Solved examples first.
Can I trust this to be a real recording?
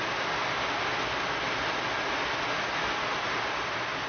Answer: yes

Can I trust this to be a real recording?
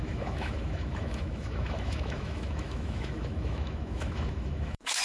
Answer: no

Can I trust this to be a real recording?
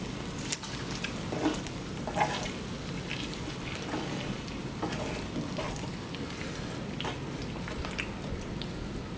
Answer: yes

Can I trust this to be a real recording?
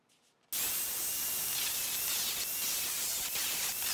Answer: yes